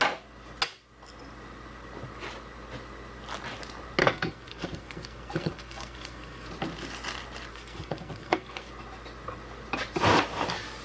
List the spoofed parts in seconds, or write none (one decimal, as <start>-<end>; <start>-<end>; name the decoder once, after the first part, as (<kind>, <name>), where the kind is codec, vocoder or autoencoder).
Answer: 4.0-6.5 (codec, SNAC); 7.5-8.7